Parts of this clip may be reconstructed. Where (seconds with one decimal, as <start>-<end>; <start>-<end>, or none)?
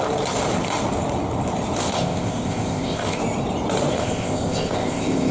1.8-3.2; 3.9-5.3